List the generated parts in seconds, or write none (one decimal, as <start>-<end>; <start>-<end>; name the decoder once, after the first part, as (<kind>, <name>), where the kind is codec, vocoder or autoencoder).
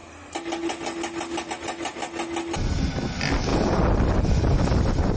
3.5-4.1 (vocoder, BigVGAN v2)